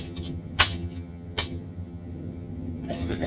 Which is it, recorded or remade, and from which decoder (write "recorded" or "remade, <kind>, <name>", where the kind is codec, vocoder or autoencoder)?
remade, vocoder, HiFi-GAN